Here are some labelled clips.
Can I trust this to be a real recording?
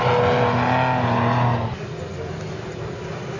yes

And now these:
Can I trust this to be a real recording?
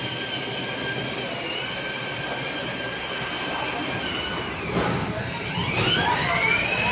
yes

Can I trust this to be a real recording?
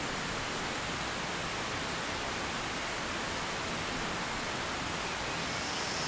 yes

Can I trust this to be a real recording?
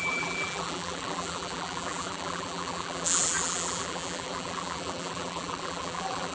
no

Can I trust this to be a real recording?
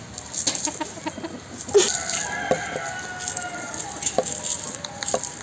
yes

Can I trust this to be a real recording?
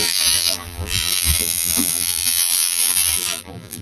no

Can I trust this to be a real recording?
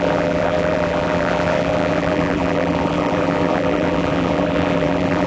no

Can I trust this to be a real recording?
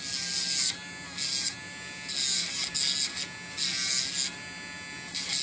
yes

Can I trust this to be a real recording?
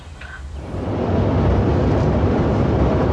no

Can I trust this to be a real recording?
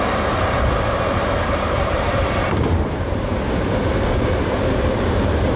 no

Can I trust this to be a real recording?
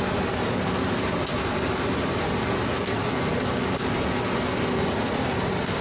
yes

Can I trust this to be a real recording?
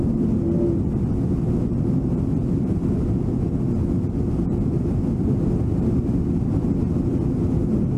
yes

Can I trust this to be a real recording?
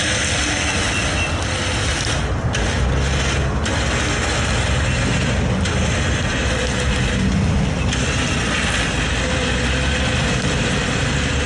yes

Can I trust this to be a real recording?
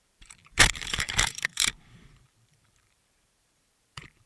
no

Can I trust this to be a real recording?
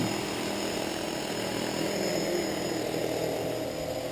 yes